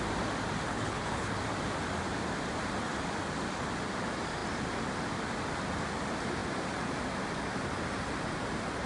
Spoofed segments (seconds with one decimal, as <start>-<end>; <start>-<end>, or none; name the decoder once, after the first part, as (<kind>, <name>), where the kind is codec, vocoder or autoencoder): 0.7-1.4 (codec, HILCodec)